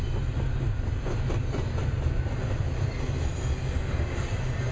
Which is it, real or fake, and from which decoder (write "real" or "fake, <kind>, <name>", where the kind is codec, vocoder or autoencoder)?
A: real